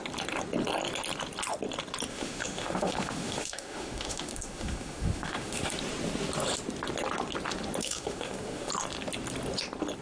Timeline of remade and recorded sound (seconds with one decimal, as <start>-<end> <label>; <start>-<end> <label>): 0.0-2.1 recorded; 2.1-5.7 remade; 5.7-7.8 recorded; 7.8-8.7 remade; 8.7-10.0 recorded